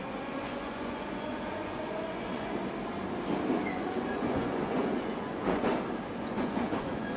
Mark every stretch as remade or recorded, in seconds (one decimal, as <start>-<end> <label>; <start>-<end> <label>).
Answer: 0.0-2.6 remade; 2.6-3.7 recorded; 3.7-5.7 remade; 5.7-6.2 recorded; 6.2-7.2 remade